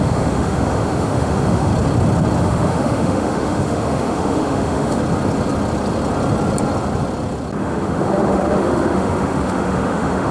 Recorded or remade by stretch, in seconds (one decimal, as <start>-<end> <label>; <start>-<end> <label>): 0.0-1.7 remade; 1.7-2.4 recorded; 2.4-5.0 remade; 5.0-7.6 recorded; 7.6-10.3 remade